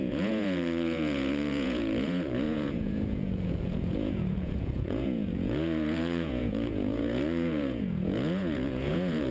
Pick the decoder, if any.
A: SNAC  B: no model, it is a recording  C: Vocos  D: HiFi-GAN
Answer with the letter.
C